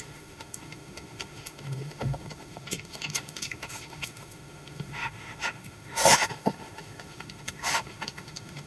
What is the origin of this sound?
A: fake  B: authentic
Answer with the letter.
A